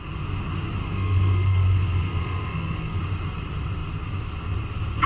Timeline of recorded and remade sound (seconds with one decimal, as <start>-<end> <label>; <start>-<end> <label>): 0.0-0.8 recorded; 0.8-3.0 remade; 3.0-5.1 recorded